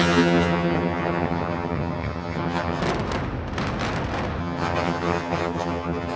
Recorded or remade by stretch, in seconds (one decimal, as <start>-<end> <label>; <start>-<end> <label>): 0.0-2.8 remade; 2.8-4.4 recorded; 4.4-6.2 remade